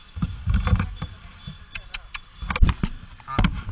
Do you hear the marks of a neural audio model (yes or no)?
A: yes